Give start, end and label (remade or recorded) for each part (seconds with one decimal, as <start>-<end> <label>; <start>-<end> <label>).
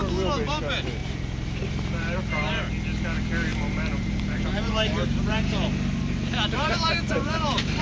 0.0-1.0 recorded; 1.0-2.6 remade; 2.6-3.5 recorded; 3.5-7.8 remade